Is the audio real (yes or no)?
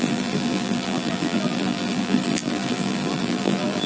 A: no